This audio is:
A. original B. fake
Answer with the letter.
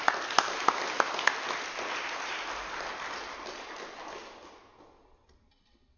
A